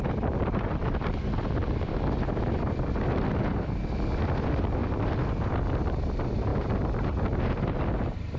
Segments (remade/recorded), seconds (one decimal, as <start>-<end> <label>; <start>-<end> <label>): 0.0-8.4 recorded